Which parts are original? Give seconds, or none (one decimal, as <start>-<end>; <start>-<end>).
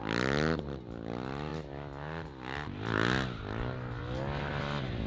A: 0.0-5.1